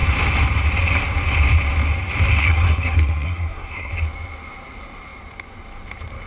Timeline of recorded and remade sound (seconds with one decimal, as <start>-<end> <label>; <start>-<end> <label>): 0.0-2.4 recorded; 2.4-3.9 remade; 3.9-6.3 recorded